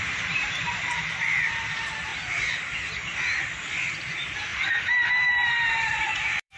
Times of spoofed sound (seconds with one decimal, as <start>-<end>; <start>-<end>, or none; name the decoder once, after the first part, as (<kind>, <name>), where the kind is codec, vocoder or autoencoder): 0.0-2.1 (vocoder, BigVGAN v2); 3.9-6.6